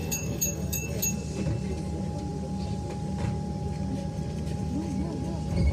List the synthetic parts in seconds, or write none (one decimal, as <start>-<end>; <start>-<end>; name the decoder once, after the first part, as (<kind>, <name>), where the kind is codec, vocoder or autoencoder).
0.0-1.0 (codec, DAC)